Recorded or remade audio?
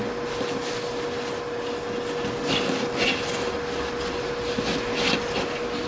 recorded